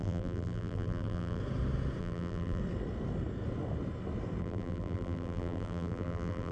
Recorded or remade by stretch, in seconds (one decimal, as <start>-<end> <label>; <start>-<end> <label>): 0.0-1.4 remade; 1.4-2.0 recorded; 2.0-2.6 remade; 2.6-4.4 recorded; 4.4-6.5 remade